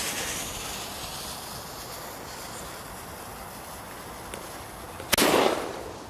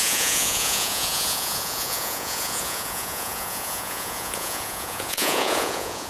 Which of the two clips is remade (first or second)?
second